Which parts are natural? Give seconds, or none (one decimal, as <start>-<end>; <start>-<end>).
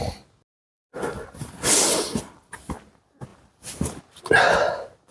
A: 0.0-5.1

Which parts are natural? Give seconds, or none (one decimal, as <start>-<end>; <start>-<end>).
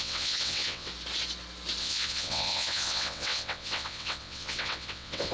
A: 0.9-1.8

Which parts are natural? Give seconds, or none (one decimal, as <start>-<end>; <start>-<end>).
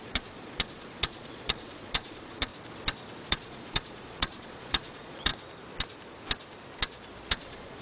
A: 2.5-3.3; 5.3-7.3